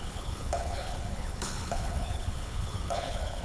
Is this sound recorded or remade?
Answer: remade